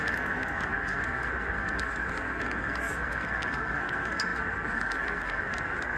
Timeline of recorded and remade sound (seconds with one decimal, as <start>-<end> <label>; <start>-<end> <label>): 0.0-6.0 remade